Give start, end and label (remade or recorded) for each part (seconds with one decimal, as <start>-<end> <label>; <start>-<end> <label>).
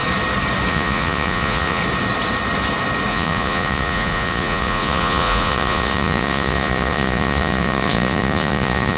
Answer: 0.0-0.7 recorded; 0.7-1.8 remade; 1.8-3.1 recorded; 3.1-9.0 remade